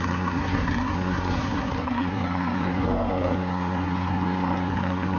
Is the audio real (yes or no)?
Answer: no